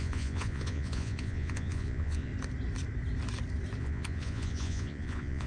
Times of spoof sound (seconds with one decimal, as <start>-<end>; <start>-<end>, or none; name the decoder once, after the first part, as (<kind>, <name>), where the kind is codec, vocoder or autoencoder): 0.0-2.3 (vocoder, Vocos); 3.8-5.5